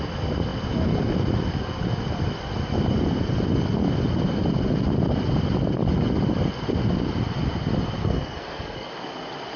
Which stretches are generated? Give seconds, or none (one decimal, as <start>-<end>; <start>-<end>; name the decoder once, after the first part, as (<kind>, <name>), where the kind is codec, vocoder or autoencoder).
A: 8.0-8.9 (codec, SNAC)